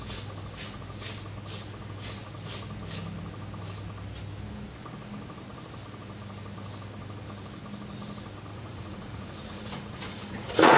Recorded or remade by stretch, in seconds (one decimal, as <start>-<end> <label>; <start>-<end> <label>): 0.0-8.5 recorded; 8.5-10.8 remade